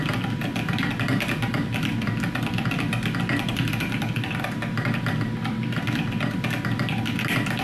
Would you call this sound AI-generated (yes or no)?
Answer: no